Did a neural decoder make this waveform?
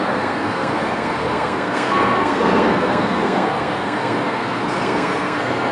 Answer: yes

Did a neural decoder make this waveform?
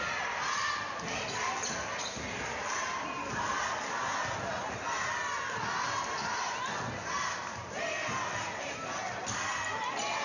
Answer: no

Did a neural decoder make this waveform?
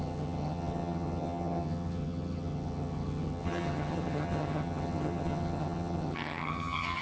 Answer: yes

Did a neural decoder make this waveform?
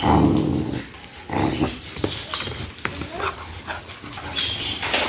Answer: no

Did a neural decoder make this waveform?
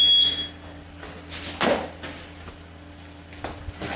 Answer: no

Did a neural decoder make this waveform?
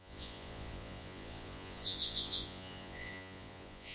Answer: yes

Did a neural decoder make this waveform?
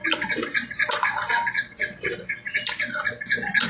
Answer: no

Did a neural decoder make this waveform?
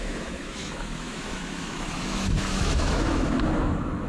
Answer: yes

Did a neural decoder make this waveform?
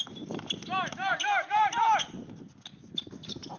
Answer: no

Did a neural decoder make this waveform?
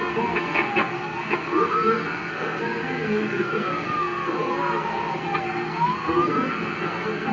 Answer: yes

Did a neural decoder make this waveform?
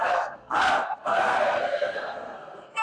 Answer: yes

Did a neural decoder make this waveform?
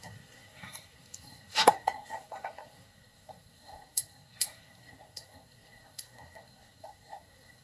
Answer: yes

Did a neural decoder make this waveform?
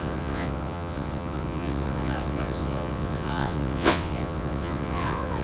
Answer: yes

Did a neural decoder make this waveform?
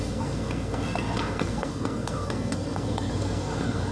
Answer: yes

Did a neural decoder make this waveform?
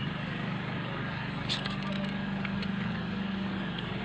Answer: yes